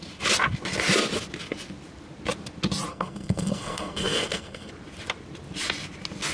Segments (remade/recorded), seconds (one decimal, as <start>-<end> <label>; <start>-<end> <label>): 0.0-2.9 recorded; 2.9-4.7 remade; 4.7-6.3 recorded